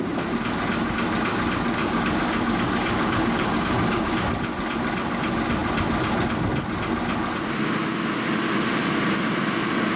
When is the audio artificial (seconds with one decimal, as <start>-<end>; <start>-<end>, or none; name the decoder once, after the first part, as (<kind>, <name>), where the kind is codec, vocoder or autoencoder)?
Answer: 1.8-4.1 (codec, DAC)